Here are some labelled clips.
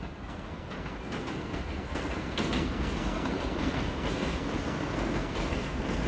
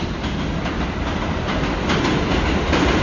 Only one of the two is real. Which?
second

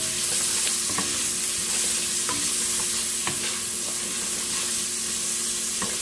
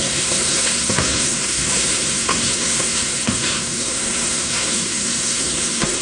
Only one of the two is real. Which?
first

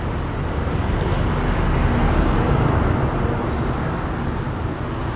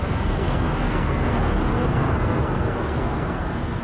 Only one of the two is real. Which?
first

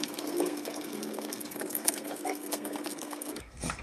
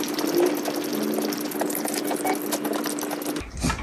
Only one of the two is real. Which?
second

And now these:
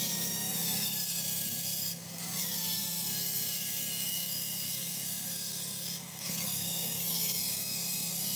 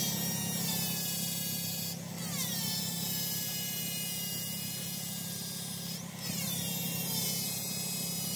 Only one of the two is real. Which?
second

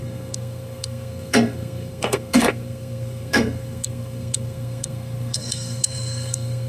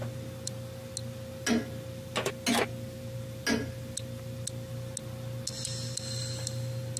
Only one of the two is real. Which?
second